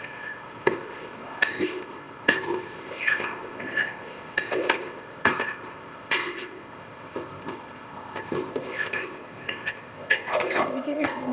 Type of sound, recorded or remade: remade